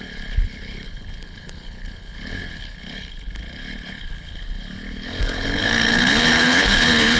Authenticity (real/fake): fake